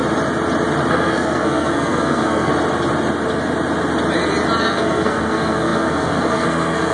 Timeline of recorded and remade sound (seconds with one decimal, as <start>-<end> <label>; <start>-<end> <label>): 0.0-0.9 recorded; 0.9-2.5 remade; 2.5-4.6 recorded; 4.6-6.9 remade